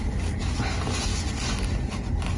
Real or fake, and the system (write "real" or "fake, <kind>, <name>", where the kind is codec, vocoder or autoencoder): real